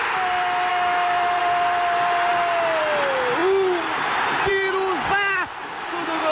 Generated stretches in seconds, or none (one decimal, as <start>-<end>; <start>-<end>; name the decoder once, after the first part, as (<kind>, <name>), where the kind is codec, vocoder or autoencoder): 0.7-1.4 (autoencoder, DAC-VAE)